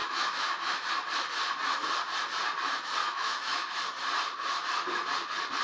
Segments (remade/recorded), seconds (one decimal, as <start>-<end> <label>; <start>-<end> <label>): 0.0-0.9 remade; 0.9-3.0 recorded; 3.0-3.8 remade; 3.8-5.6 recorded